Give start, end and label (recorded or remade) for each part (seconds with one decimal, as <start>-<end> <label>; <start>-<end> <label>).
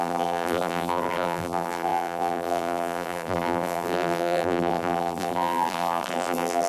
0.0-6.7 remade